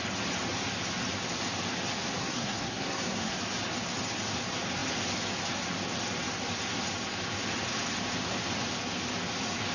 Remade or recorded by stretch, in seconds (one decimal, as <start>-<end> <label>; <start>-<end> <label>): 0.0-2.2 recorded; 2.2-3.4 remade; 3.4-9.7 recorded